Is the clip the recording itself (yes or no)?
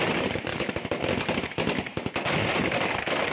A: yes